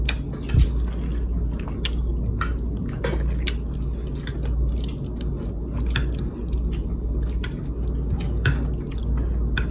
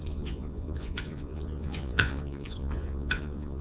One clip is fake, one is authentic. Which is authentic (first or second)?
first